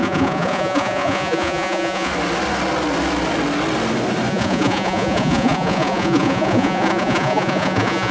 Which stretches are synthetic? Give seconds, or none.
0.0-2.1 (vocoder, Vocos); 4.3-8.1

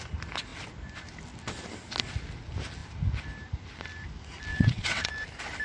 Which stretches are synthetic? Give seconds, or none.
4.5-5.1 (vocoder, WaveNeXt)

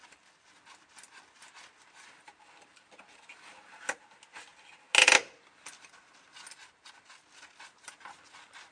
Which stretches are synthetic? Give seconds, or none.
none

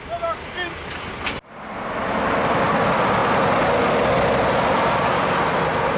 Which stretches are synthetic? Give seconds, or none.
none